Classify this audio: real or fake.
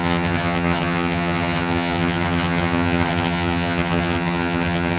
fake